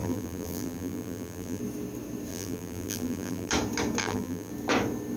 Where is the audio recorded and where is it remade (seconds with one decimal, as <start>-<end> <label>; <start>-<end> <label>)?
0.0-1.6 remade; 1.6-2.3 recorded; 2.3-3.5 remade; 3.5-4.0 recorded; 4.0-4.5 remade; 4.5-5.2 recorded